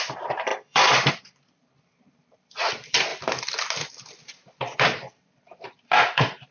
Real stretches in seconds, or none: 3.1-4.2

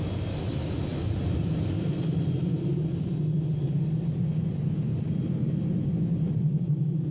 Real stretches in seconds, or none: 0.0-7.1

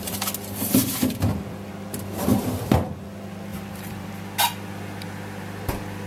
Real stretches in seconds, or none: 0.0-0.8; 1.7-2.3; 2.9-3.5; 4.1-6.1

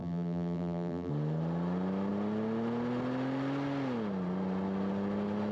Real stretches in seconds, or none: 1.1-5.5